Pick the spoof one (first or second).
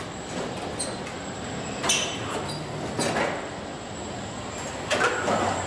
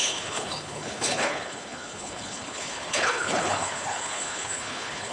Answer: second